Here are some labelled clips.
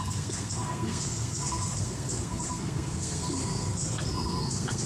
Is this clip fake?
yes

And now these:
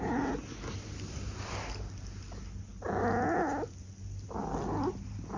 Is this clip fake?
no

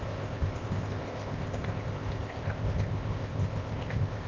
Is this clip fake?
yes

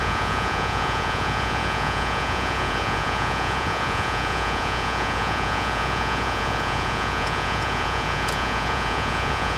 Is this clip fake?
yes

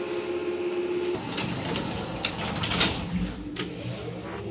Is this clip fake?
no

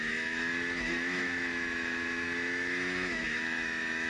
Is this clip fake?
yes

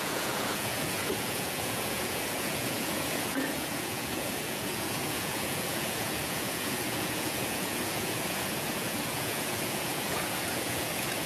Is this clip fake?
yes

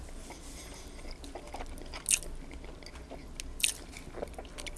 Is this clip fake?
no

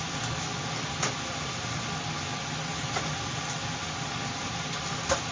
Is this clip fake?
no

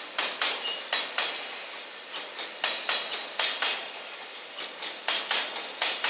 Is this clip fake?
no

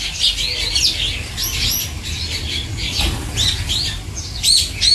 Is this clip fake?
no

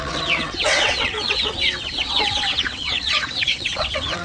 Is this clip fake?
yes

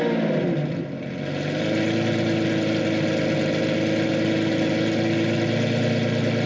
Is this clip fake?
no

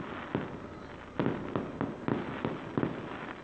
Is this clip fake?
no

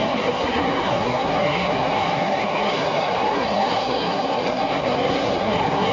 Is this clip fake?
yes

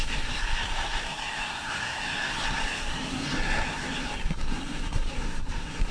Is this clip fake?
yes